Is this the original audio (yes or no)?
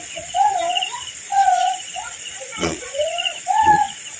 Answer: no